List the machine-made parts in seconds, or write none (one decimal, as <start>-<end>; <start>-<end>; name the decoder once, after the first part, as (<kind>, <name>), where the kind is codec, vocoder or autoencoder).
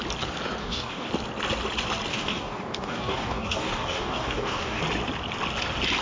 0.6-1.1 (codec, DAC); 2.1-4.8